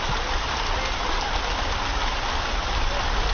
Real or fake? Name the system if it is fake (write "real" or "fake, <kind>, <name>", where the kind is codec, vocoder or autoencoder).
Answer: real